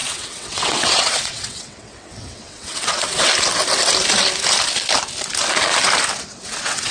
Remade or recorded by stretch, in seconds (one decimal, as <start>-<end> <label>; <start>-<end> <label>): 0.0-3.3 remade; 3.3-6.2 recorded; 6.2-6.9 remade